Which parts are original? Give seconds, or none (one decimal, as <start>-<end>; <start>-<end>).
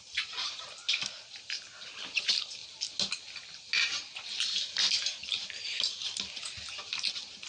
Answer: 0.0-7.5